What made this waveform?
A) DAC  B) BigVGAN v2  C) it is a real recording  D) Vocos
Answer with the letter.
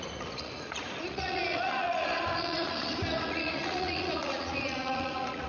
D